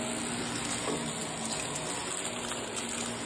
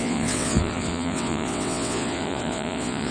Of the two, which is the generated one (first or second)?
second